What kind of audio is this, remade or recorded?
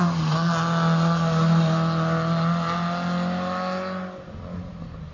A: recorded